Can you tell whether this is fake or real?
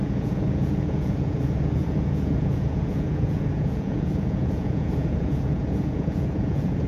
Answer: fake